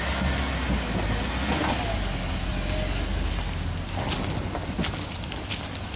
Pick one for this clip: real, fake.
real